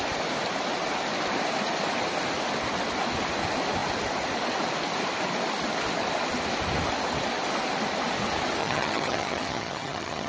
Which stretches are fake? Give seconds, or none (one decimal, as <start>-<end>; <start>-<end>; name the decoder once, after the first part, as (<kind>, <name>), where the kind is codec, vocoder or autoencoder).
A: 8.6-10.3 (vocoder, HiFi-GAN)